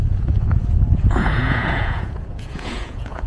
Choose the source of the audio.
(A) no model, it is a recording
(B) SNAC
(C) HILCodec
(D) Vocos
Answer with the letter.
D